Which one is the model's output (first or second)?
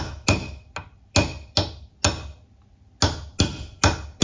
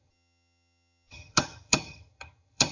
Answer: second